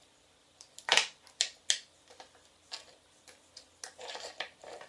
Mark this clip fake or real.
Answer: real